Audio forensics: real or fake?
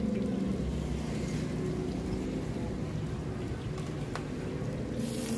real